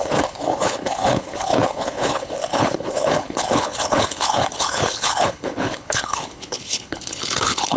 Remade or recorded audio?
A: remade